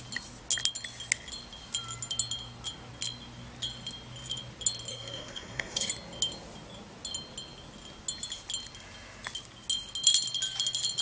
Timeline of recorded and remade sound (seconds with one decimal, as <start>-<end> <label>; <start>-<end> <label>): 0.0-4.9 recorded; 4.9-5.9 remade; 5.9-11.0 recorded